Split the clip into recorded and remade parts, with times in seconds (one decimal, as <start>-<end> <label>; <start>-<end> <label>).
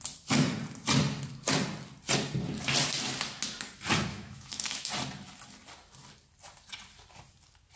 0.0-4.1 recorded; 4.1-4.9 remade; 4.9-7.8 recorded